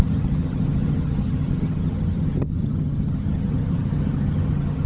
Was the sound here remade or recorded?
remade